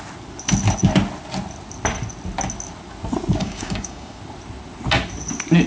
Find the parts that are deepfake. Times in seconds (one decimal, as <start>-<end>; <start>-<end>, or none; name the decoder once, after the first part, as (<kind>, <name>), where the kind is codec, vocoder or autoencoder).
3.4-4.2 (codec, DAC)